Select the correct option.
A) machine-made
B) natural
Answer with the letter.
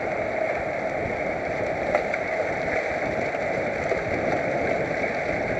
B